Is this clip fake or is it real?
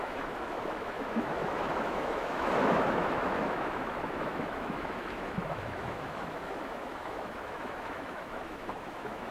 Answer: fake